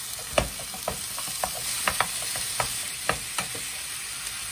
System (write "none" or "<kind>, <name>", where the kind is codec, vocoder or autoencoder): none